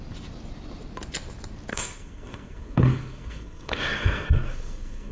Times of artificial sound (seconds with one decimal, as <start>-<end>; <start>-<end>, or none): 1.7-5.1